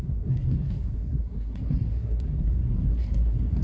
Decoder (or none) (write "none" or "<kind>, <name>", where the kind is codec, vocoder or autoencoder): codec, SNAC